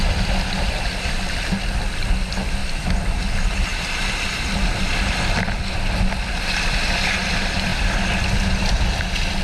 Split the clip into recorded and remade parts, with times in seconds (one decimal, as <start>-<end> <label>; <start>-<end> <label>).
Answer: 0.0-2.6 recorded; 2.6-3.2 remade; 3.2-3.7 recorded; 3.7-4.3 remade; 4.3-9.4 recorded